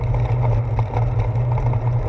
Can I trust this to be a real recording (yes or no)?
yes